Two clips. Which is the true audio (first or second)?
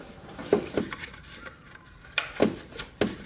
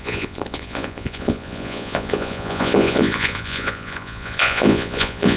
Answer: first